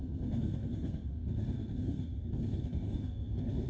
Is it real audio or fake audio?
fake